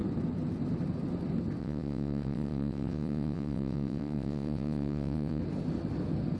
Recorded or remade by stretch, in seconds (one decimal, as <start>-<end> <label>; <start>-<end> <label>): 0.0-1.6 recorded; 1.6-5.4 remade; 5.4-6.4 recorded